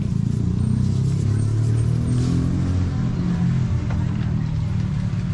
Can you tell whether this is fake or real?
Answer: real